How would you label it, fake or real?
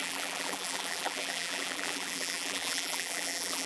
fake